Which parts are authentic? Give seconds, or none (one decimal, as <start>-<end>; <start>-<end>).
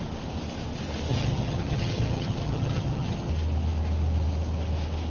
0.0-1.1; 3.3-5.1